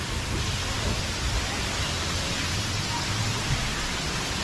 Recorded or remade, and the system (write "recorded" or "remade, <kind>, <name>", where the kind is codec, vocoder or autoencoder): recorded